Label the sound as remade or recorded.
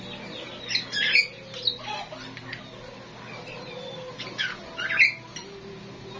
recorded